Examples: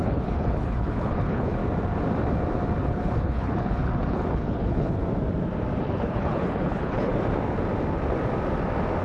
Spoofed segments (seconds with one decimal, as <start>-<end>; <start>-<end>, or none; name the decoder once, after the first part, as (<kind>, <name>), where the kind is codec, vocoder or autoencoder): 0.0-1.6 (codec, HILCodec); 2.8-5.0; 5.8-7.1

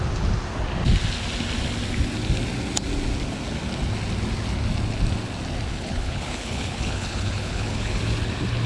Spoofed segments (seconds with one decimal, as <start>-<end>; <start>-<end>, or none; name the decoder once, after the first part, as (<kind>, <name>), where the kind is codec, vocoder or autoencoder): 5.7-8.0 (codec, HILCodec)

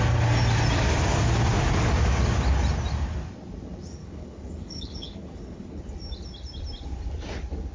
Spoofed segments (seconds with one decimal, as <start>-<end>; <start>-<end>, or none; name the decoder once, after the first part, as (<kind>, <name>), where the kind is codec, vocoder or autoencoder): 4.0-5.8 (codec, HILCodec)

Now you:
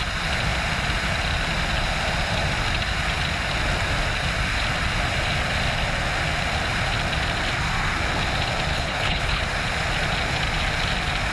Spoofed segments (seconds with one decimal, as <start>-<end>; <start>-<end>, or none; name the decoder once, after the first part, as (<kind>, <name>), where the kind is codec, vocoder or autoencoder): 8.7-9.4 (codec, HILCodec)

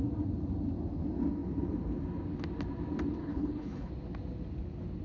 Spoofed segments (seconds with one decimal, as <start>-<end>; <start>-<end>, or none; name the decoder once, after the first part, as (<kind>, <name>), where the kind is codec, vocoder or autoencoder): 3.2-3.9 (codec, HILCodec)

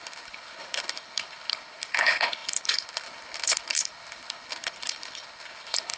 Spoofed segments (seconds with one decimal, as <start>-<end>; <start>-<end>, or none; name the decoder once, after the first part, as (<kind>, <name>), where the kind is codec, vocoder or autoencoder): 0.0-6.0 (codec, HILCodec)

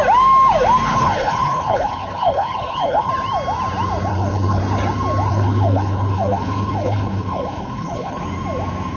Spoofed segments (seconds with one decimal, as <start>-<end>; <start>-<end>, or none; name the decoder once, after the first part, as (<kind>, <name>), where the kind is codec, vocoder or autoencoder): 0.9-3.1 (codec, HILCodec); 4.1-4.6; 5.3-8.2